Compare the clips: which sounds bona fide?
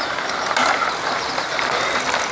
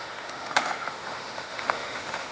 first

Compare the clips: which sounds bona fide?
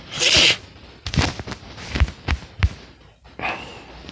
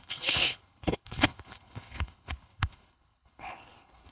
first